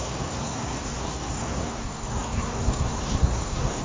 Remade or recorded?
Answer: remade